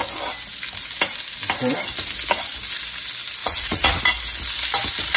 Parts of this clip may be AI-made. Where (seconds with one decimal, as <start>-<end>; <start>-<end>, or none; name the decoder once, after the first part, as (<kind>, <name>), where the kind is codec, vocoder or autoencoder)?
3.4-4.0 (vocoder, Vocos)